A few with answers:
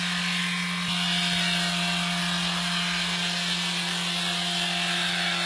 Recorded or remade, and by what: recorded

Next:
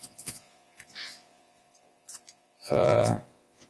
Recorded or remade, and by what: remade, vocoder, Vocos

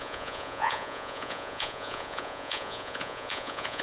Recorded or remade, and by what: remade, vocoder, Vocos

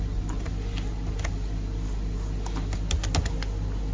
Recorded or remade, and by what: recorded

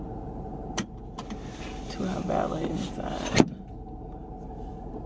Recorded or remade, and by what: recorded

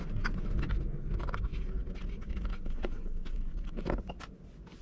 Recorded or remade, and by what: recorded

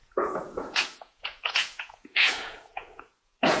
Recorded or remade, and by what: remade, vocoder, Vocos